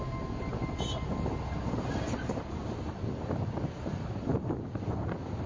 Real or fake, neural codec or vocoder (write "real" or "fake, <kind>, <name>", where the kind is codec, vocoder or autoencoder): real